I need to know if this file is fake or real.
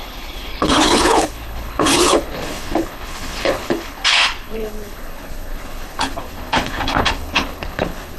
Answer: fake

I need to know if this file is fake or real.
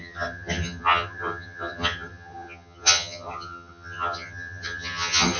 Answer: fake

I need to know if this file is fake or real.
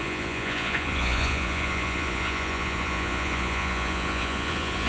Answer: fake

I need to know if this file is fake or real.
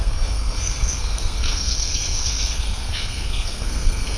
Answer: fake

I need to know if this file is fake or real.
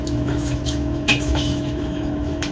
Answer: fake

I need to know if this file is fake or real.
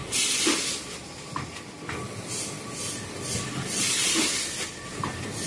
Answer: real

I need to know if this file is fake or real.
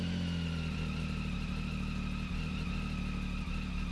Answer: real